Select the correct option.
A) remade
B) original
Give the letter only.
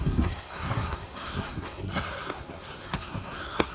A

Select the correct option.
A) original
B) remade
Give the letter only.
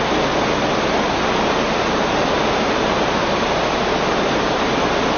A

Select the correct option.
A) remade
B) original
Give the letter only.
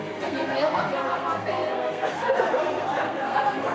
A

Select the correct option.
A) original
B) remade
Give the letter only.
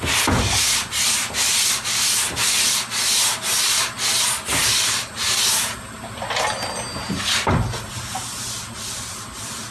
A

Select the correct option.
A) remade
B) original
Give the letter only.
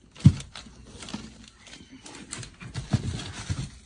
B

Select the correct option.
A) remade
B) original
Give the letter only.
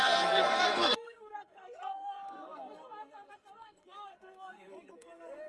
A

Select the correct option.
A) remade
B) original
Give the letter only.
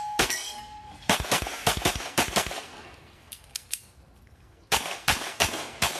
A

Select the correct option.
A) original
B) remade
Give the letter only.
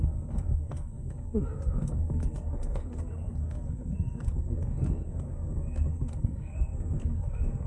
B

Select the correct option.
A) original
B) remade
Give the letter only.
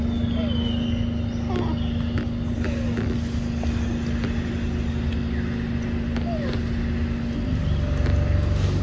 A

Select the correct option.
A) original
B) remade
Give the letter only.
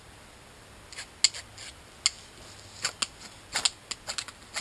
A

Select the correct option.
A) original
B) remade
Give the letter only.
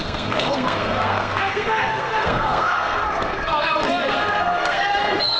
B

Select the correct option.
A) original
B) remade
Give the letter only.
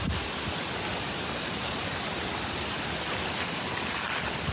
A